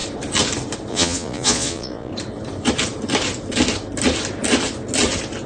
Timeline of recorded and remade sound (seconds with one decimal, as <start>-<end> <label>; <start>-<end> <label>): 0.0-0.9 recorded; 0.9-2.1 remade; 2.1-5.5 recorded